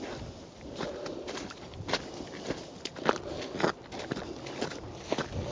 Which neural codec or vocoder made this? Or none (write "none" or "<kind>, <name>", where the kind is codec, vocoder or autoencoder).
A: none